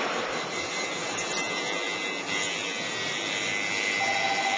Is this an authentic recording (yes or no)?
yes